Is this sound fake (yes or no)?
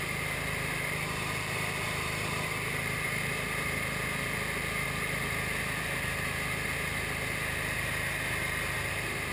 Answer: no